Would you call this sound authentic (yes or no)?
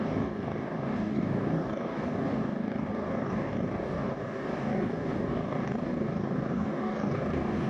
no